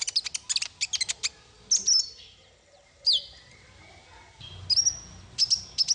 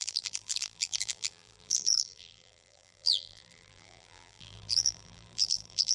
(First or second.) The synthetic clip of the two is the second